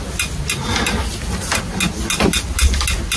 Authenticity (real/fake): real